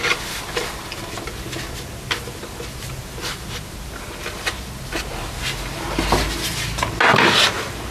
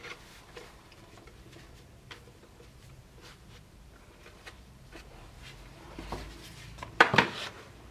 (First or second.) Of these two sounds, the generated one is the second